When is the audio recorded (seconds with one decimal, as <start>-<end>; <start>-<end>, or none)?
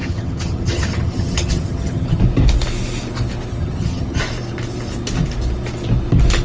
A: 2.2-3.5; 4.2-6.4